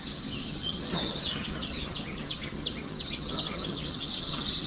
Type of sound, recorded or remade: remade